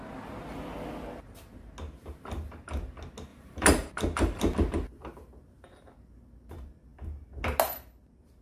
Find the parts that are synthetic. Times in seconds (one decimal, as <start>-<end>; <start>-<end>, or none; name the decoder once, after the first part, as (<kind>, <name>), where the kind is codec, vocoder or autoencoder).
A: 3.3-4.4 (vocoder, BigVGAN v2)